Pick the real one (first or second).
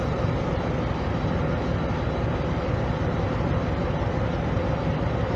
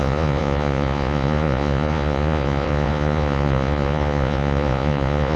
first